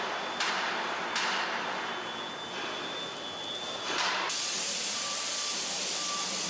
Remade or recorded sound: recorded